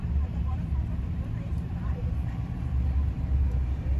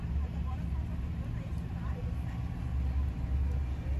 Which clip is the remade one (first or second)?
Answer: first